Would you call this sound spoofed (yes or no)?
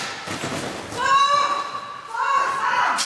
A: no